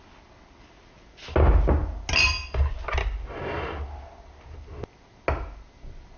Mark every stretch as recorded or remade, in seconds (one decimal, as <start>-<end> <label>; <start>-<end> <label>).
0.0-6.2 recorded